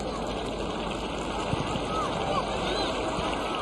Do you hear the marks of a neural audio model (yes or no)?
no